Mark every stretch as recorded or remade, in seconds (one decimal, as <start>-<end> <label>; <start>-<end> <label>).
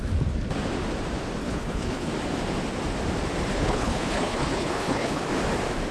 0.0-1.4 recorded; 1.4-2.1 remade; 2.1-3.5 recorded; 3.5-5.2 remade; 5.2-5.9 recorded